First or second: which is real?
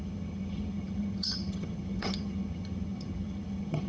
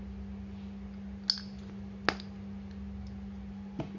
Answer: second